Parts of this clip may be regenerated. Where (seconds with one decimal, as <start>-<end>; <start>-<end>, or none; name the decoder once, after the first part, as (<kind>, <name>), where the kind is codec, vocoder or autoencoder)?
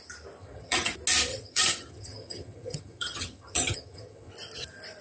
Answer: 0.4-0.9 (vocoder, HiFi-GAN); 1.3-4.3